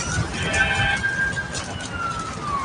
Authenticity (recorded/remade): recorded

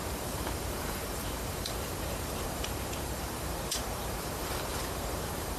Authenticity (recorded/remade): remade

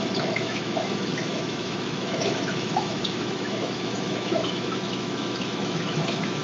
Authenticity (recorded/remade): remade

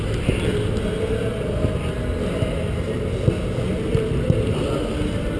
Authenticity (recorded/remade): recorded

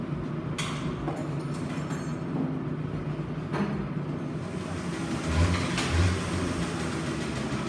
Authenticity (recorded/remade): recorded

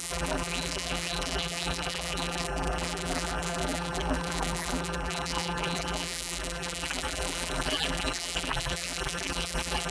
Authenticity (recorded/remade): remade